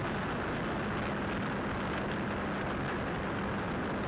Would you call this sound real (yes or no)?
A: yes